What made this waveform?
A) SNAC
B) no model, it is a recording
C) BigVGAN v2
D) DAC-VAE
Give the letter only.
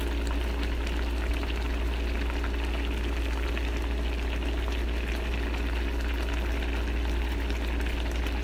B